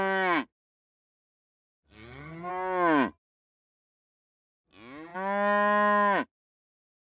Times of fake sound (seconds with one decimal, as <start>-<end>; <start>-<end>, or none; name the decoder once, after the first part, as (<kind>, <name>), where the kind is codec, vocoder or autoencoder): 1.2-2.5 (codec, SNAC)